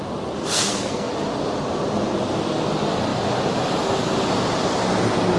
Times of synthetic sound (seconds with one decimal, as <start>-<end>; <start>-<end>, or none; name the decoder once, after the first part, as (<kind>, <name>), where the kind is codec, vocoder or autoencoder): 0.4-1.1 (codec, SNAC)